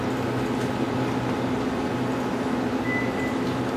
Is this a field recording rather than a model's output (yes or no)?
yes